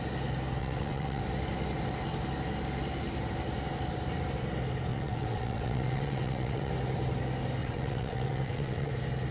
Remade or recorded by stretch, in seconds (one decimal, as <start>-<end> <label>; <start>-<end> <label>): 0.0-0.6 recorded; 0.6-1.2 remade; 1.2-4.9 recorded; 4.9-6.7 remade; 6.7-7.6 recorded; 7.6-8.9 remade; 8.9-9.3 recorded

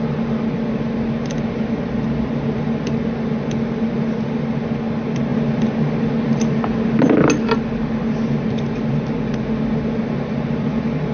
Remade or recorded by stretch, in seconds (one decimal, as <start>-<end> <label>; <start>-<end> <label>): 0.0-11.1 recorded

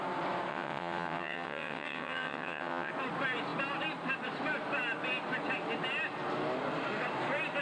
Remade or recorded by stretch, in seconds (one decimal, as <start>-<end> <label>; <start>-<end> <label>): 0.0-0.5 recorded; 0.5-2.9 remade; 2.9-7.6 recorded

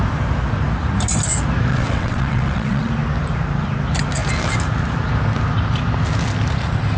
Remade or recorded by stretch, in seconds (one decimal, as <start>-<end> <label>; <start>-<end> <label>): 0.0-1.7 recorded; 1.7-2.9 remade; 2.9-7.0 recorded

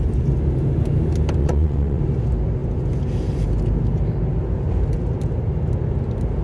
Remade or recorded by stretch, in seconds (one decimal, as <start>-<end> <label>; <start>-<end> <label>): 0.0-1.4 recorded; 1.4-2.0 remade; 2.0-6.4 recorded

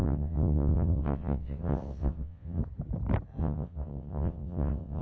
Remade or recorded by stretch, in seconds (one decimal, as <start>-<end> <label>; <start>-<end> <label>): 0.0-2.6 remade; 2.6-3.4 recorded; 3.4-5.0 remade